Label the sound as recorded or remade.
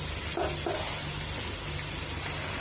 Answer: recorded